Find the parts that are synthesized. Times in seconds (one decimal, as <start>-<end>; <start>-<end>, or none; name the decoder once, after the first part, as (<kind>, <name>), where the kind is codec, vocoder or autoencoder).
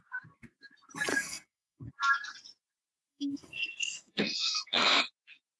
1.1-1.9 (codec, SNAC); 3.1-5.0